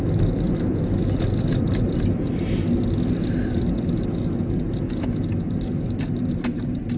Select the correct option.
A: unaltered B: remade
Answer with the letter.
A